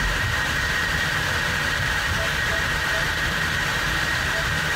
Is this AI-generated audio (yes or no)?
yes